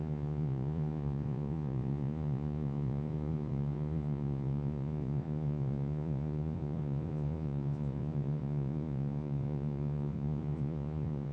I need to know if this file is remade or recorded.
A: remade